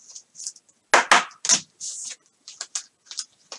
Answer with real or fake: real